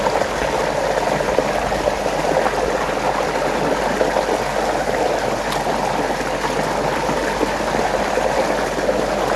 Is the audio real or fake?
real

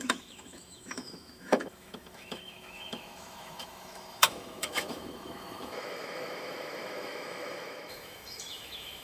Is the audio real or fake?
fake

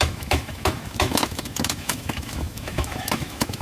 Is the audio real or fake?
fake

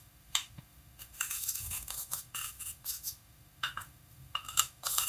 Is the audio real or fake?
fake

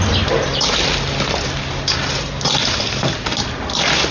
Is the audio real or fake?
real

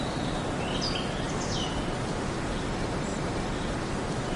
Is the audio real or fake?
real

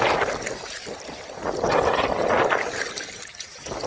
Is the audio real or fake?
real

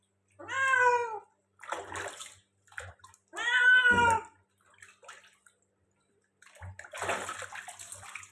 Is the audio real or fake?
real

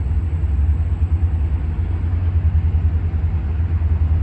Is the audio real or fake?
real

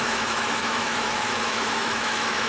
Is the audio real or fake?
fake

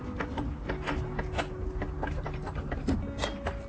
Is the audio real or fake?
real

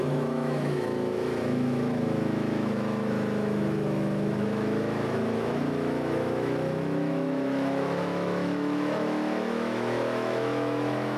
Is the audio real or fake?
fake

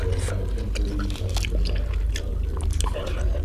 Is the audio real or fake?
real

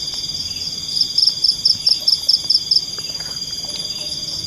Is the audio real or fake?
real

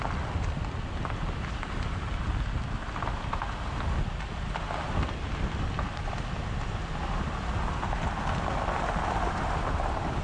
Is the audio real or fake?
real